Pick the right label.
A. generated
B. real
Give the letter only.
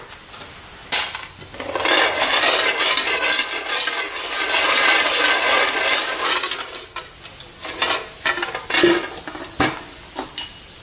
B